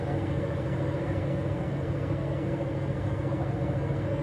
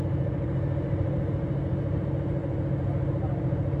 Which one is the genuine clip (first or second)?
second